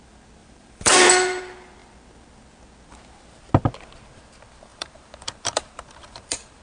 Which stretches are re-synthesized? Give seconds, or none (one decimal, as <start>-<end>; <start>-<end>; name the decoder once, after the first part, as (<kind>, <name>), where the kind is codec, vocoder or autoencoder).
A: 0.4-1.4 (vocoder, BigVGAN v2); 4.7-6.6